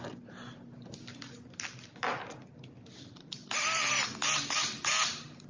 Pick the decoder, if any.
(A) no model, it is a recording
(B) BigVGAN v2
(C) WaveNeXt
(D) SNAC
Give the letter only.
A